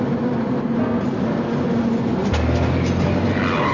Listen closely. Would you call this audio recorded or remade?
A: recorded